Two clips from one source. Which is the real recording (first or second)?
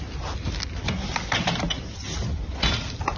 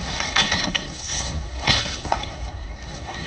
first